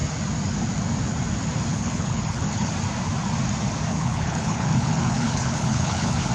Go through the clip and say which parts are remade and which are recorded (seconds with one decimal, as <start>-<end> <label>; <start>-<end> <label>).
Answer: 0.0-1.7 recorded; 1.7-2.7 remade; 2.7-3.9 recorded; 3.9-6.3 remade